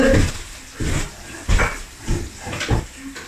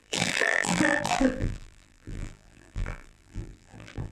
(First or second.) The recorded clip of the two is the first